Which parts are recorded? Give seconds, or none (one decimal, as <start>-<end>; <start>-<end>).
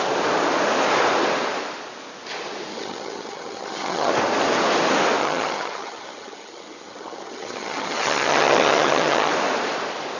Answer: 0.0-2.7; 4.1-5.2; 9.3-10.2